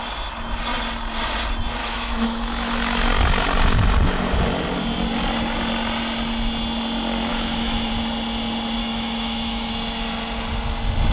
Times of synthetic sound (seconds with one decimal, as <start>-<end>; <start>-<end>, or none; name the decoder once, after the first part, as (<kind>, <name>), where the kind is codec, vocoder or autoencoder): 1.8-3.1 (autoencoder, DAC-VAE); 7.3-7.9; 8.8-9.7